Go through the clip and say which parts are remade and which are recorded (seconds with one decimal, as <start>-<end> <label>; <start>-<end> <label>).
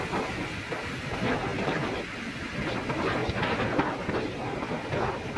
0.0-5.4 recorded